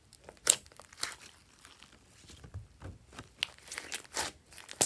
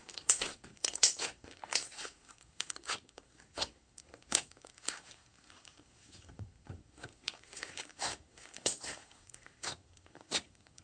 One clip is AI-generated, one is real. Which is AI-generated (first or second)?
second